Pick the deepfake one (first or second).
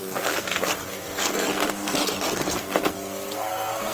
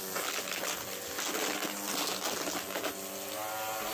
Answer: first